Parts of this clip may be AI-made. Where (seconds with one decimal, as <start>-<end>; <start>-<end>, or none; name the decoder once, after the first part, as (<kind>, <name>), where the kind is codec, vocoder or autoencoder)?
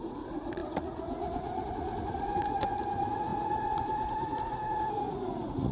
0.0-5.7 (vocoder, Vocos)